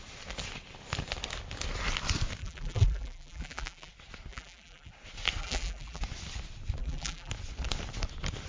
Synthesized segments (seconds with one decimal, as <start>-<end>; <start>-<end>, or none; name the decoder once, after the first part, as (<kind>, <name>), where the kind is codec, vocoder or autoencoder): 2.4-3.9 (vocoder, BigVGAN v2); 4.3-4.9; 5.4-6.0; 6.8-7.3